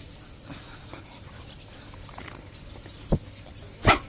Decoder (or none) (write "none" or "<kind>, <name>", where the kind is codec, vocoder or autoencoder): none